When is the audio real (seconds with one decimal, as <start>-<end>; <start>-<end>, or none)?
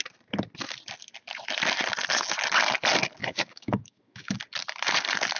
0.0-3.2; 4.4-5.4